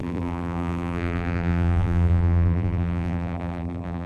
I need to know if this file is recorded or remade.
remade